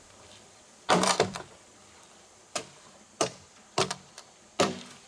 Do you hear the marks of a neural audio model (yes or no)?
yes